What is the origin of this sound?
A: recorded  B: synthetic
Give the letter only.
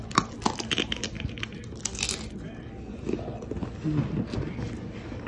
A